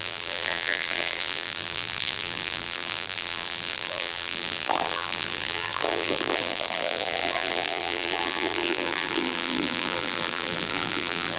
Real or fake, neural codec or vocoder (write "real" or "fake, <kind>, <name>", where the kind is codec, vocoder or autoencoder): fake, vocoder, BigVGAN v2